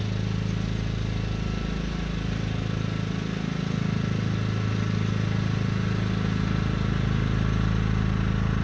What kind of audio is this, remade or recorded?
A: recorded